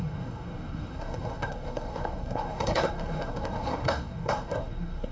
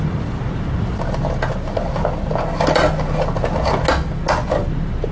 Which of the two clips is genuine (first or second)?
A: second